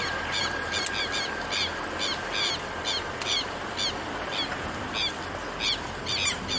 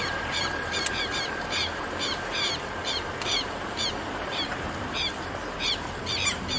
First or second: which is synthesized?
second